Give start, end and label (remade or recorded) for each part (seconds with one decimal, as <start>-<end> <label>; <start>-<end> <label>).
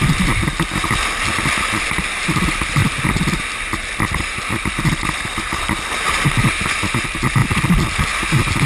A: 0.0-8.7 recorded